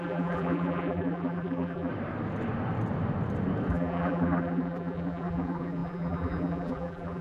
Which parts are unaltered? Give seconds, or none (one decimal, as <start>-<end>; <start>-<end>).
1.9-3.7